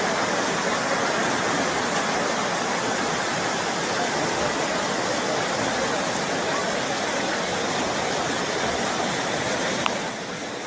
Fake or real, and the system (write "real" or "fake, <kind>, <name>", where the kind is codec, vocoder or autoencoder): real